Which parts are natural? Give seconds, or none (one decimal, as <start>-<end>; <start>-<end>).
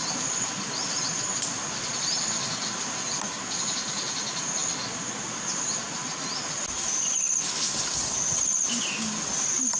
0.0-9.8